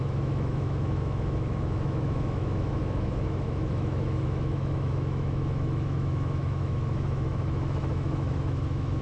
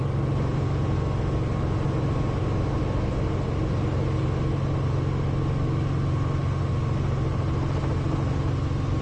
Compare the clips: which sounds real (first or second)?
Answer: second